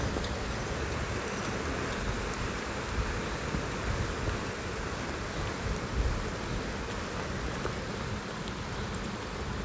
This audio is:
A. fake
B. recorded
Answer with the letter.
B